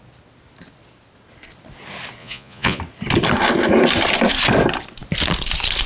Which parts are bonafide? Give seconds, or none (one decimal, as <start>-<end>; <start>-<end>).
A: 0.0-2.2; 2.8-5.9